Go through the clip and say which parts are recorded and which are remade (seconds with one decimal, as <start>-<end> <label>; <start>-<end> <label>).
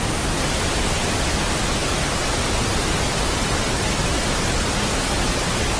0.0-5.8 recorded